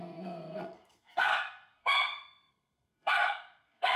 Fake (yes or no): yes